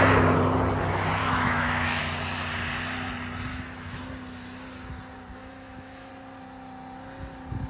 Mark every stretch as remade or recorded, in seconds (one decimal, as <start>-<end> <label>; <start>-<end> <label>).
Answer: 0.0-1.2 recorded; 1.2-2.0 remade; 2.0-3.5 recorded; 3.5-4.0 remade; 4.0-5.4 recorded; 5.4-6.1 remade; 6.1-7.7 recorded